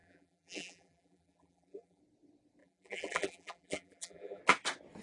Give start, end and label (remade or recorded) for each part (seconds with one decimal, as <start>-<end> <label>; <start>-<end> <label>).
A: 0.0-2.0 remade; 2.0-2.6 recorded; 2.6-4.4 remade; 4.4-5.0 recorded